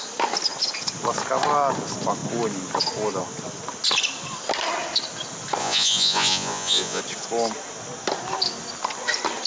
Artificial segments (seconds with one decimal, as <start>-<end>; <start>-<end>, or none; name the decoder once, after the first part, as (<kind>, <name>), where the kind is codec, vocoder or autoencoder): 5.6-7.0 (vocoder, Vocos)

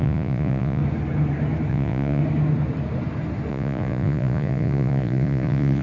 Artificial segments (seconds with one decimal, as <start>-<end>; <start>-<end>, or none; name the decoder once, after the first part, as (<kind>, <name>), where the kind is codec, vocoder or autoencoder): 0.0-0.8 (vocoder, Vocos); 1.7-2.2; 3.5-5.8